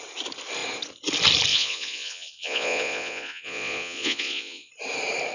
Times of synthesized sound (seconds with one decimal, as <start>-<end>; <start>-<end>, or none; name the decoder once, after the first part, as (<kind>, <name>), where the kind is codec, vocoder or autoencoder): 1.5-4.7 (vocoder, Vocos)